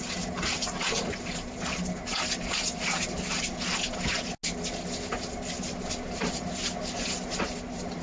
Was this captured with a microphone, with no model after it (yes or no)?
yes